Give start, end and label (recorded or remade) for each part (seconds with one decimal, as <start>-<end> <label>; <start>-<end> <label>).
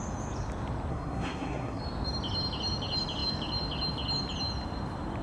0.0-0.9 recorded; 0.9-1.8 remade; 1.8-5.2 recorded